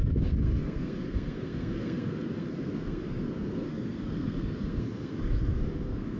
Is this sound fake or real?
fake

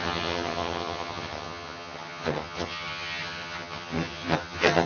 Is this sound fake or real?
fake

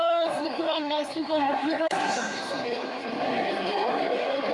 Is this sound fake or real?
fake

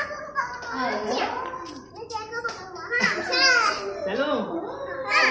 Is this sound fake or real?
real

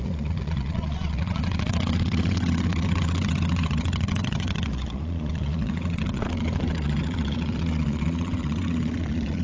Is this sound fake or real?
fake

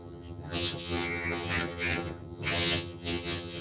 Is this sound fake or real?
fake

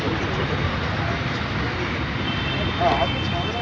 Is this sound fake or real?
real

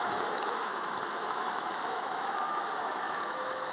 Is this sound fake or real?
fake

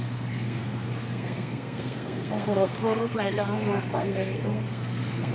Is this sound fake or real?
fake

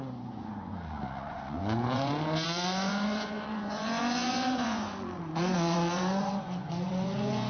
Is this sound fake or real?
fake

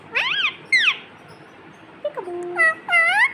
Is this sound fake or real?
real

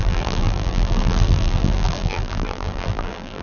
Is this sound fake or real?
fake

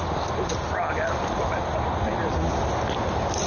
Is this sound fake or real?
real